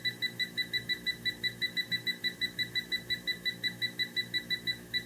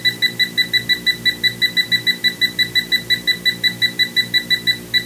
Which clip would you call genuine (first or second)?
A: second